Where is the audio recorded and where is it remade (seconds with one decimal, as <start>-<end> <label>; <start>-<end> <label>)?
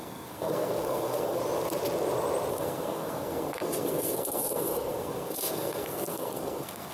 0.0-1.4 remade; 1.4-2.5 recorded; 2.5-6.9 remade